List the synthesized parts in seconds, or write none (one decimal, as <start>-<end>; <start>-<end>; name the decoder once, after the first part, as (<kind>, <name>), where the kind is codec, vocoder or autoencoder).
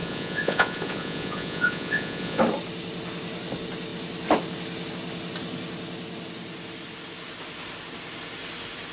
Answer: 0.0-2.4 (vocoder, Vocos)